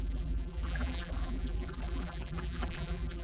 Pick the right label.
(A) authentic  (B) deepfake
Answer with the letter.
B